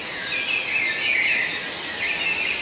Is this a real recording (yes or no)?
yes